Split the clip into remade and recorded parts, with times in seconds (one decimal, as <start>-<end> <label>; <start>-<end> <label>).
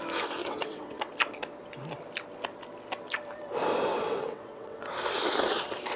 0.0-0.4 recorded; 0.4-1.1 remade; 1.1-3.9 recorded; 3.9-4.8 remade; 4.8-6.0 recorded